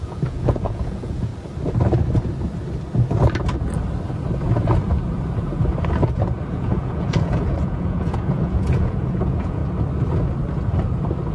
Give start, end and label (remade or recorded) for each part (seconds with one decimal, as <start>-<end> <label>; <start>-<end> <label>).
0.0-1.3 remade; 1.3-6.5 recorded; 6.5-9.6 remade; 9.6-11.3 recorded